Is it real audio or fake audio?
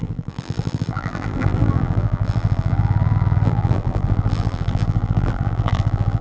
fake